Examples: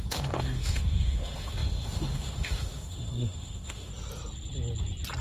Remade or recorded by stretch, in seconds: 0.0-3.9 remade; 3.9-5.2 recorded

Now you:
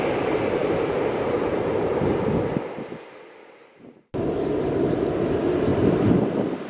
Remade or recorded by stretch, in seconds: 0.0-6.7 recorded

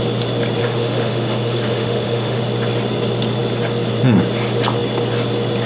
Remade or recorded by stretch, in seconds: 0.0-0.6 recorded; 0.6-2.4 remade; 2.4-5.7 recorded

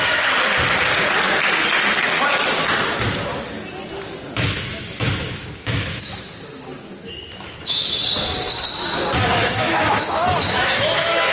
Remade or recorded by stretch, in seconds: 0.0-4.7 recorded; 4.7-6.1 remade; 6.1-7.0 recorded; 7.0-7.9 remade; 7.9-9.4 recorded; 9.4-11.3 remade

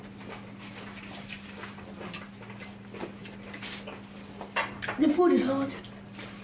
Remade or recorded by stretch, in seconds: 0.0-6.4 recorded

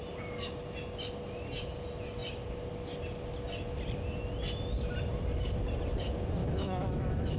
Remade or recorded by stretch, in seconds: 0.0-6.4 recorded; 6.4-7.4 remade